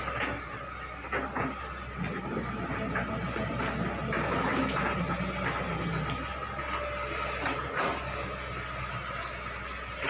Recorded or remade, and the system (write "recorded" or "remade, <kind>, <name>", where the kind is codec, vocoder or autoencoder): recorded